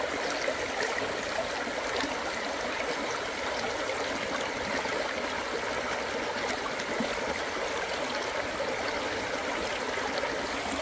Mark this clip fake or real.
real